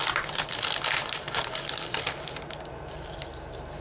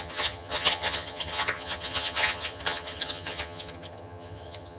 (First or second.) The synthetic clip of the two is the second